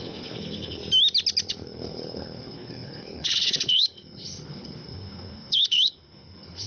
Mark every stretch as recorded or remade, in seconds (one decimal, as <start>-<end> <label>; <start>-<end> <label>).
0.0-0.8 remade; 0.8-1.5 recorded; 1.5-6.7 remade